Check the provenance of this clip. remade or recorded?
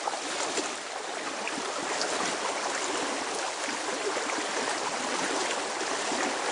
recorded